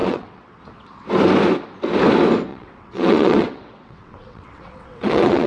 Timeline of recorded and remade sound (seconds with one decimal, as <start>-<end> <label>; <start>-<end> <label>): 0.0-0.6 remade; 0.6-2.5 recorded; 2.5-5.5 remade